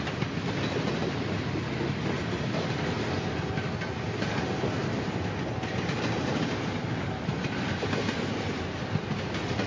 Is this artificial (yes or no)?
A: no